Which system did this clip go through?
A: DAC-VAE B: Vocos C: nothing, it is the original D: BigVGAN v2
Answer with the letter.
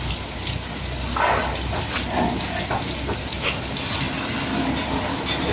C